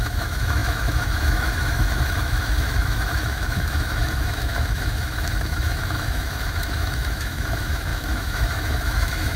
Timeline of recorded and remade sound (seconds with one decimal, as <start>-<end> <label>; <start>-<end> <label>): 0.0-9.4 remade